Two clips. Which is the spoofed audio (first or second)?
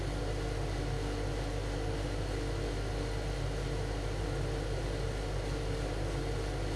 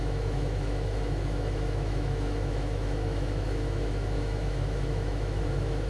second